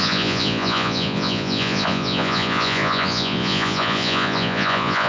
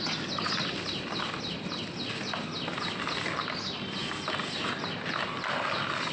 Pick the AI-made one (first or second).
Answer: first